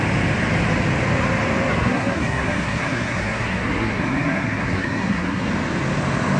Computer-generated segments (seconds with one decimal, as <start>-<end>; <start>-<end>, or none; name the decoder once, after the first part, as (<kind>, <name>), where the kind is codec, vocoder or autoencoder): 1.7-5.5 (codec, SNAC)